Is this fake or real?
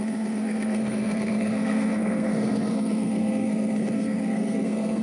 fake